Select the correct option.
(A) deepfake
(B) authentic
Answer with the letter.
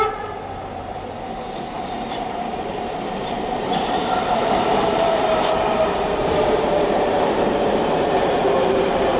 A